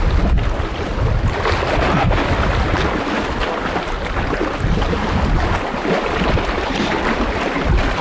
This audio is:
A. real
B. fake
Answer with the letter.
A